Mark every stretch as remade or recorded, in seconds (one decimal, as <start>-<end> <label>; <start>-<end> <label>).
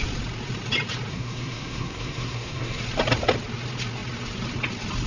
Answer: 0.0-1.1 recorded; 1.1-2.8 remade; 2.8-5.1 recorded